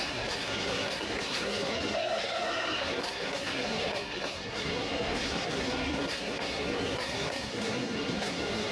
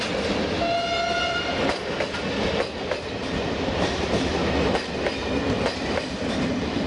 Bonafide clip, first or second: second